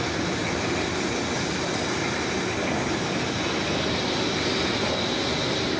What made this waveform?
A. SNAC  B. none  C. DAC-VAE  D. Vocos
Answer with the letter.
B